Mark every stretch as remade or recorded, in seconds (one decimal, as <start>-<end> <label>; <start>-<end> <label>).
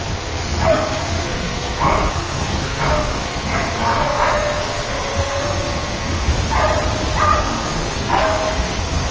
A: 0.0-6.3 remade; 6.3-7.4 recorded; 7.4-9.1 remade